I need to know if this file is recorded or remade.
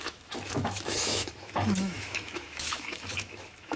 remade